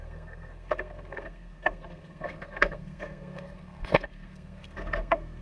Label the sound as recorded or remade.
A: remade